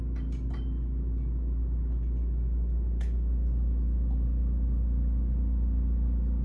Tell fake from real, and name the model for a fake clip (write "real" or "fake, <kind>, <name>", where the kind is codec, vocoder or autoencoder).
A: real